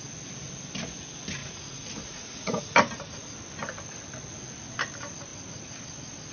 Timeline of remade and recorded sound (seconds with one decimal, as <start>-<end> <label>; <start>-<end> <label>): 0.0-1.4 recorded; 1.4-2.6 remade; 2.6-6.3 recorded